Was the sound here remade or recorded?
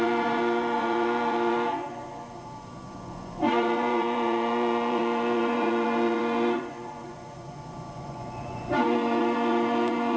remade